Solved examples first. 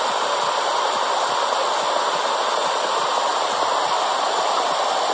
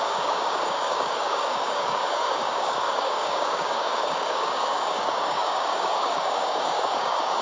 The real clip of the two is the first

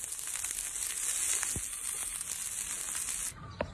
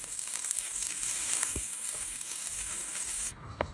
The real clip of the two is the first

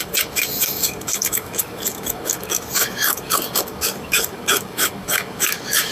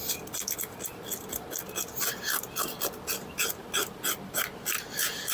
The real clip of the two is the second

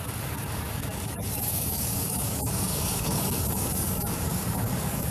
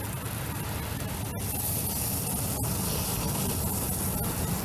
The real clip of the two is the second